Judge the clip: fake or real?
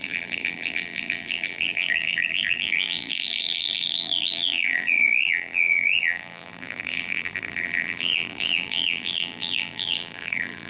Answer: fake